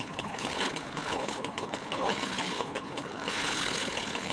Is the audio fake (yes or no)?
yes